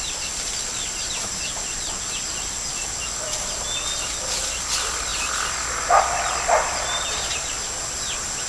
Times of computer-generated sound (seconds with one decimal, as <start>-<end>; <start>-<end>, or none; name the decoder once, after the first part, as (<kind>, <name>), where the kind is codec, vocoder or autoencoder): none